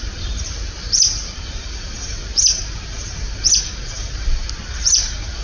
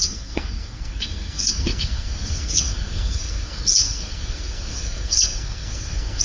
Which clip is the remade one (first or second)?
second